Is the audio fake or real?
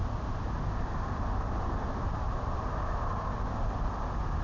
real